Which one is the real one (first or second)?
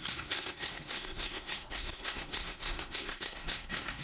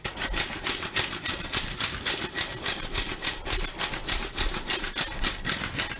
second